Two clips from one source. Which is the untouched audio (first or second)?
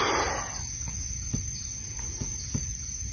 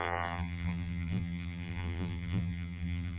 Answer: first